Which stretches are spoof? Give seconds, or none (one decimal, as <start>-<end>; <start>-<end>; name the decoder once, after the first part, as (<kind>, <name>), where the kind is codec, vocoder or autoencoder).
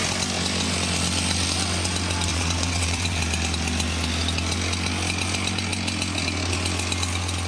2.3-3.2 (vocoder, WaveNeXt)